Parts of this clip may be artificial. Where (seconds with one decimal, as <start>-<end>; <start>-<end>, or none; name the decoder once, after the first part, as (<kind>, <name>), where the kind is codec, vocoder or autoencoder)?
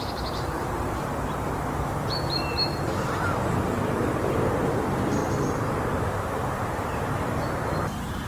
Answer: 0.0-5.2 (vocoder, BigVGAN v2); 6.0-8.3